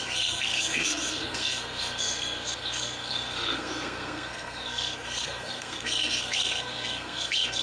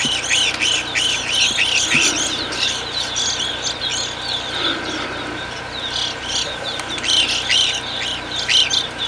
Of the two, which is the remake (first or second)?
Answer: first